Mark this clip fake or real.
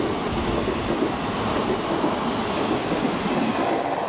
real